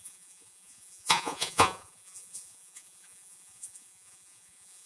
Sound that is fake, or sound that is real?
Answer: fake